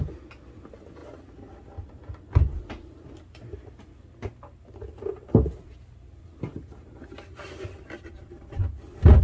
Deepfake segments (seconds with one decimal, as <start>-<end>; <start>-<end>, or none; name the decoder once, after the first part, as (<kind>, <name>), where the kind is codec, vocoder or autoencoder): none